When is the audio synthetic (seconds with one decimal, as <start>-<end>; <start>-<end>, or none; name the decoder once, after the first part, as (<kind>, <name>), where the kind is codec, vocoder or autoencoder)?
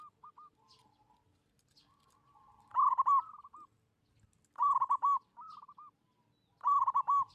2.7-3.3 (vocoder, BigVGAN v2)